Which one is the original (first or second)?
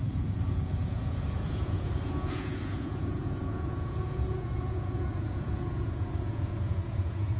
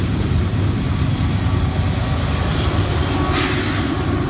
second